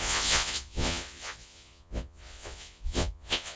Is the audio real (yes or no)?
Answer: no